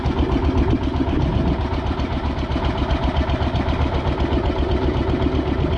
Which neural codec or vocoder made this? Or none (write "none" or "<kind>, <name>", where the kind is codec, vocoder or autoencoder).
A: none